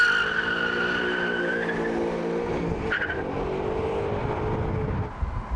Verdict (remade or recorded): recorded